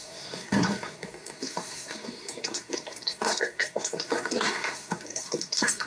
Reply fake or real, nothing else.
fake